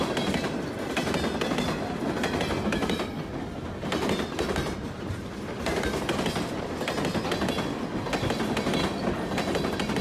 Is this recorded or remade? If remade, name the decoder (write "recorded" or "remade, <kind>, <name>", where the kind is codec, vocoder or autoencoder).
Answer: recorded